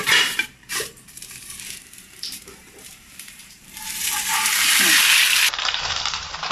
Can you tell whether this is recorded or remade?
remade